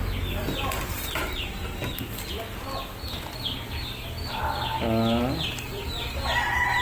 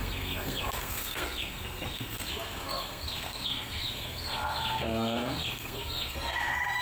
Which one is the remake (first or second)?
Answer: second